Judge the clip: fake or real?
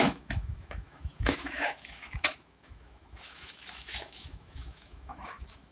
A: fake